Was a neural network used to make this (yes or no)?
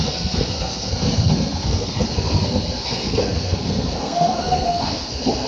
yes